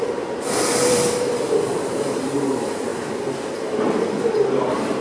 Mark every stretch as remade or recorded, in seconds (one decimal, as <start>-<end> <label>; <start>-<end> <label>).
0.0-2.9 remade; 2.9-4.6 recorded; 4.6-5.0 remade